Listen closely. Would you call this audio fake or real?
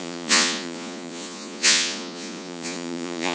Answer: fake